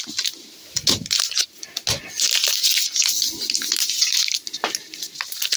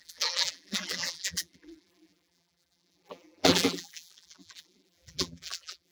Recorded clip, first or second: first